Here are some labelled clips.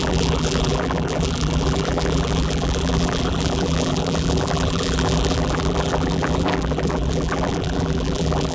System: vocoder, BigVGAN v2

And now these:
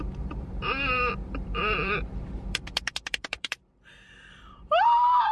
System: vocoder, BigVGAN v2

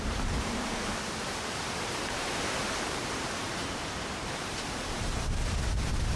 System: vocoder, BigVGAN v2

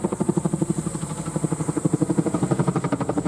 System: vocoder, BigVGAN v2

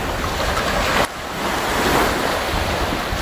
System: none